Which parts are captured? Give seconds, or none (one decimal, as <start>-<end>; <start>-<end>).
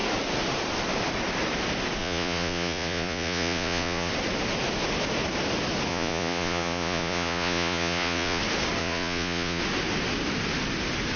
0.0-2.0; 4.1-5.9; 8.4-8.8; 9.6-11.2